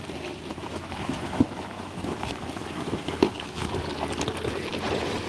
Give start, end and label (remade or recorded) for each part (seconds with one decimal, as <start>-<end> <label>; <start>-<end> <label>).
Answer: 0.0-0.5 recorded; 0.5-3.7 remade; 3.7-5.3 recorded